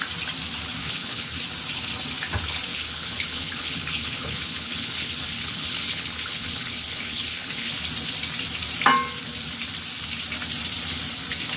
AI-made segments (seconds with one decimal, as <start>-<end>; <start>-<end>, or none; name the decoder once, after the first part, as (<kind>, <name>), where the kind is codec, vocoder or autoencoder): 0.8-1.4 (codec, HILCodec); 2.7-7.7

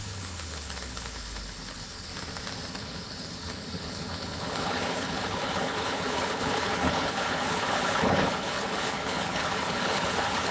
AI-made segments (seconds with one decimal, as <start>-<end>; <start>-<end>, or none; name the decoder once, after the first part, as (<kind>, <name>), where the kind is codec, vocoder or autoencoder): 0.0-2.1 (codec, HILCodec); 2.7-10.5

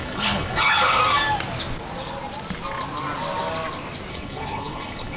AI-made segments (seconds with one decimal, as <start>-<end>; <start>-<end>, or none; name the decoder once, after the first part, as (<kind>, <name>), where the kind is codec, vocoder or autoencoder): 0.0-1.0 (codec, HILCodec); 4.1-5.2

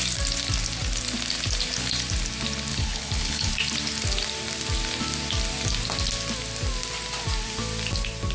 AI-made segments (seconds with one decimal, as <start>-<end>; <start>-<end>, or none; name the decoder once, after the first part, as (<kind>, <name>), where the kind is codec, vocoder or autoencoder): 2.7-3.5 (codec, HILCodec)

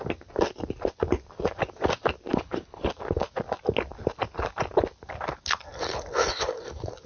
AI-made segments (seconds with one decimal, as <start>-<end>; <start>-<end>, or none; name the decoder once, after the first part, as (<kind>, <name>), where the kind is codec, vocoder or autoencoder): 2.3-2.9 (codec, HILCodec)